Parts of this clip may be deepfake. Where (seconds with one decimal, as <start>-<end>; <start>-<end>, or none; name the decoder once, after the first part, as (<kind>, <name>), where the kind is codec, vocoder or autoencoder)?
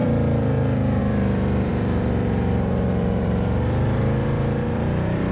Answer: 0.0-5.3 (vocoder, BigVGAN v2)